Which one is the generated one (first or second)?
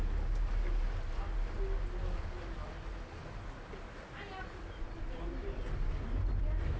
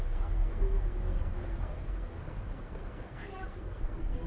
second